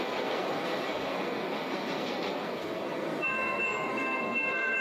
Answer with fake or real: fake